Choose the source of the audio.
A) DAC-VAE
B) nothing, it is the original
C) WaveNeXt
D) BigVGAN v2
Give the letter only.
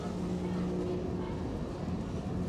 B